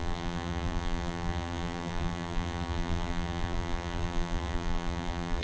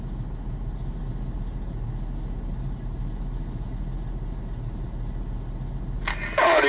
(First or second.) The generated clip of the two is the first